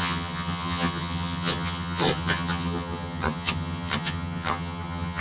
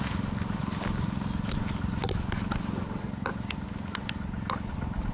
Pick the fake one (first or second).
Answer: first